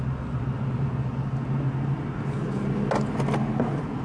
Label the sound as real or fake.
real